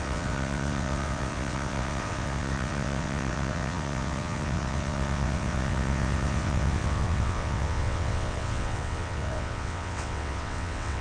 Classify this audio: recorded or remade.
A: remade